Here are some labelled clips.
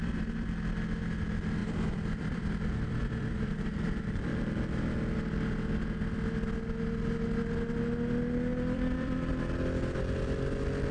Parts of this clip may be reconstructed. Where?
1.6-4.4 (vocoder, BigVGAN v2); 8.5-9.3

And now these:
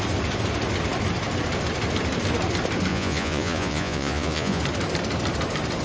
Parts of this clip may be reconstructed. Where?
2.9-4.6 (vocoder, Vocos)

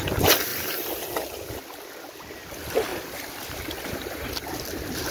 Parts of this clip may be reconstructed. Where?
0.5-2.1 (vocoder, BigVGAN v2); 2.9-4.5

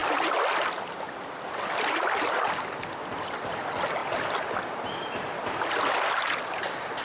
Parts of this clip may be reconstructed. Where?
none

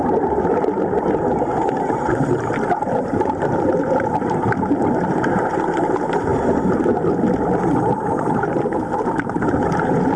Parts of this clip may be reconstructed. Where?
0.0-6.3 (vocoder, BigVGAN v2); 7.6-10.2

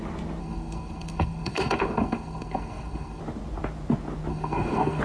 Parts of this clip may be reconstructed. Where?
0.4-3.2 (codec, SNAC); 4.3-5.0

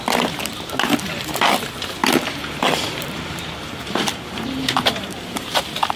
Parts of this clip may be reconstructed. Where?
2.0-5.6 (vocoder, BigVGAN v2)